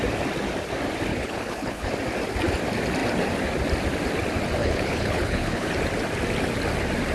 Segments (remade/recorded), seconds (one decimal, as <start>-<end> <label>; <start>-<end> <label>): 0.0-1.1 recorded; 1.1-1.9 remade; 1.9-4.6 recorded; 4.6-5.7 remade; 5.7-7.1 recorded